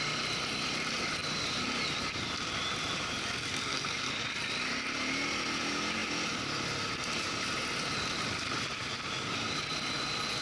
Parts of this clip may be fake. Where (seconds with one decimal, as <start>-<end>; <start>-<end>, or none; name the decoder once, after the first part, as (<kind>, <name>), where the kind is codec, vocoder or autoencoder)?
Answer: 3.5-4.1 (codec, SNAC)